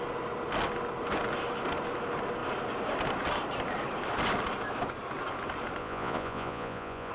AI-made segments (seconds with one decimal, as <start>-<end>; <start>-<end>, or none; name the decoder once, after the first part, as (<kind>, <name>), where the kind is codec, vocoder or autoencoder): 5.8-7.1 (vocoder, Vocos)